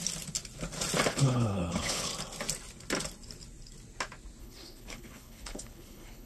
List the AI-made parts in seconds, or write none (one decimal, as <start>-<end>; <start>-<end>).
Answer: 1.1-2.1; 4.4-6.3